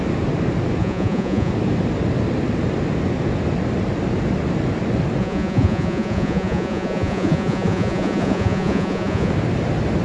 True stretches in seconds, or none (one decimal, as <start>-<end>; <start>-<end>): 0.0-0.8; 1.5-5.2; 9.3-10.0